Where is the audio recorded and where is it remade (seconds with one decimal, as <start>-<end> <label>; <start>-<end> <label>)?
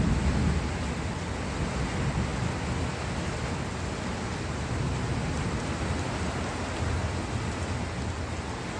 0.0-8.8 recorded